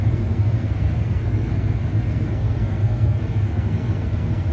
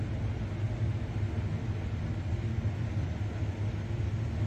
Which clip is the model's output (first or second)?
first